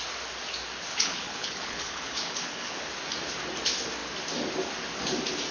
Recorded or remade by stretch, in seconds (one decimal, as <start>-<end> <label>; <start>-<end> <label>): 0.0-0.9 recorded; 0.9-2.8 remade; 2.8-5.5 recorded